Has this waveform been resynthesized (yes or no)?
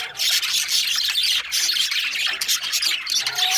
no